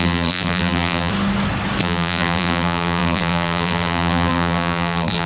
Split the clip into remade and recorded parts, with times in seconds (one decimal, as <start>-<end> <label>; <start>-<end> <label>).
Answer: 0.0-1.1 remade; 1.1-1.8 recorded; 1.8-5.3 remade